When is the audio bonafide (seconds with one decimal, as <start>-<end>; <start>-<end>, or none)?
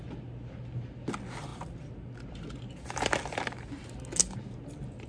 0.0-5.1